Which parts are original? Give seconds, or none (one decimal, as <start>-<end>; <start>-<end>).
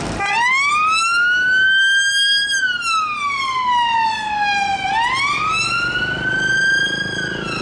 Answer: 0.0-7.6